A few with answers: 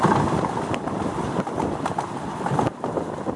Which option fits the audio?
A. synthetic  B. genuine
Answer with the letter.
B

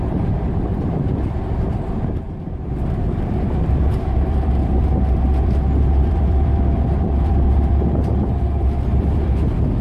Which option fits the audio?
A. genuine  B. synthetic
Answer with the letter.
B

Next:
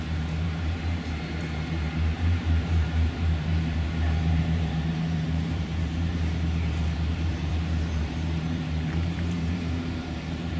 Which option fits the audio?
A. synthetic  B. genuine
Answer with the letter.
A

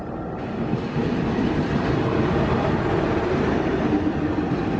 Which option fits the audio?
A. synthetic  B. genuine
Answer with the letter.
A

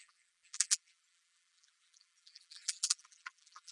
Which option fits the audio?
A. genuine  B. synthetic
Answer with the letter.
B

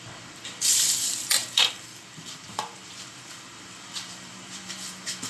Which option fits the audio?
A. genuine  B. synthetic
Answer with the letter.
B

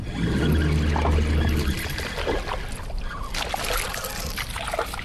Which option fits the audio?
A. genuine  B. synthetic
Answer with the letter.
A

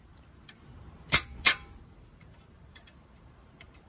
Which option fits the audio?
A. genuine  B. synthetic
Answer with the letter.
B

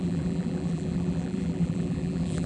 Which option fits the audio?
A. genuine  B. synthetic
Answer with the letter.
B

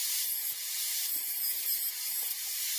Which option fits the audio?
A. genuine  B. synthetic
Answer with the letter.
B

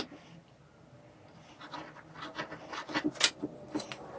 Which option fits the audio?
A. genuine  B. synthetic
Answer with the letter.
A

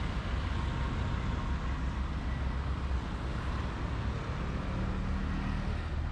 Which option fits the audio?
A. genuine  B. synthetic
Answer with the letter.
A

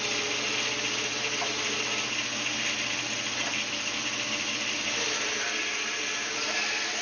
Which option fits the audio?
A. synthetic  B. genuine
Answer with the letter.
B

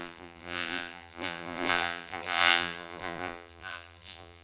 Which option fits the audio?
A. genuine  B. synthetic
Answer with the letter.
B